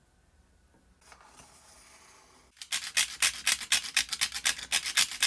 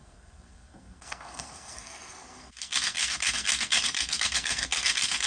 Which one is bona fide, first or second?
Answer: first